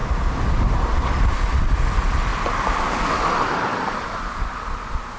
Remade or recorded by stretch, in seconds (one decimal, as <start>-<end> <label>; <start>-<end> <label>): 0.0-1.3 remade; 1.3-5.2 recorded